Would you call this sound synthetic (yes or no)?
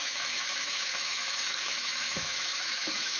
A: yes